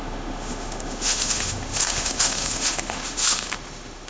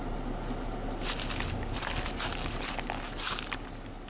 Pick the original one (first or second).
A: second